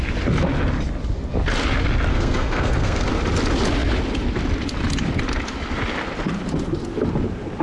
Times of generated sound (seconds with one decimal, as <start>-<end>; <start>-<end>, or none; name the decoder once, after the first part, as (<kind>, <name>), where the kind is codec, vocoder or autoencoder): 2.1-3.1 (codec, SNAC)